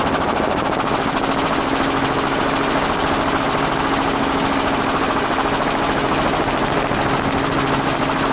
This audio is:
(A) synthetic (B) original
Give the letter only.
B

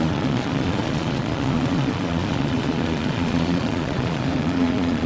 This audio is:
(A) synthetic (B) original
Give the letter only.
A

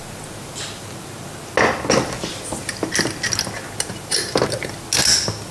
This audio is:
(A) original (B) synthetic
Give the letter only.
A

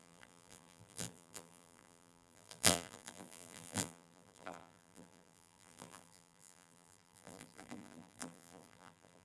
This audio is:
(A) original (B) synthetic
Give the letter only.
B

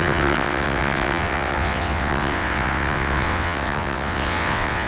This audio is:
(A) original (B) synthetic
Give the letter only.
B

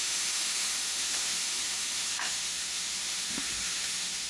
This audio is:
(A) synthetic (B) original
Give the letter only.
A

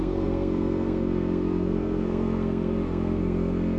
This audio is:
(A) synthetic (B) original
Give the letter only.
A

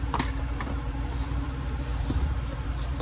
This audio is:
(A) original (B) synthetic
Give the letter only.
B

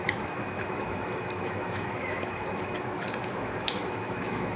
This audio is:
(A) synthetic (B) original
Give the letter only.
A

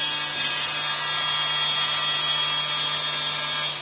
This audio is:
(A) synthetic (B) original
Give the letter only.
B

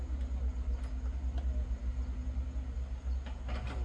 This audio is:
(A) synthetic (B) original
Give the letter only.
B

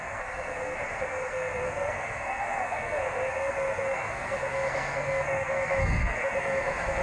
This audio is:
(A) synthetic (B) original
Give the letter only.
A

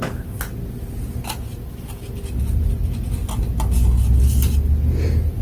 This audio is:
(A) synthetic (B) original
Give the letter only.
B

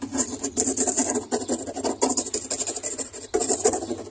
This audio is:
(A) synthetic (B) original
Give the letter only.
B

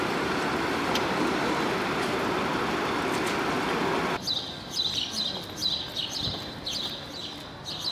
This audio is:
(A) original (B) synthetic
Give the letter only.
A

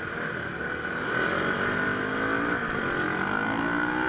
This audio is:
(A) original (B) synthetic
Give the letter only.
A